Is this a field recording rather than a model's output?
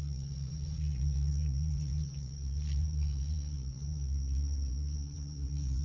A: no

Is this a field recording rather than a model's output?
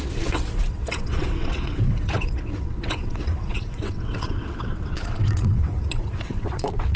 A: no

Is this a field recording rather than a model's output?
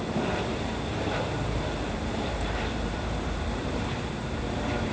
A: no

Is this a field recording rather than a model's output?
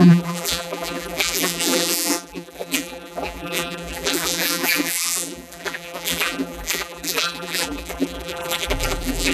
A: no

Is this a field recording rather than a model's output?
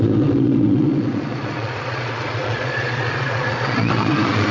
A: no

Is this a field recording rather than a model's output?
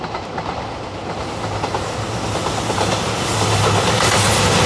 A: yes